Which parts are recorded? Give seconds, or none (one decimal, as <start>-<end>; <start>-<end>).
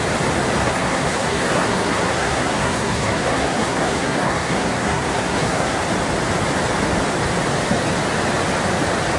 0.0-0.6; 5.8-9.2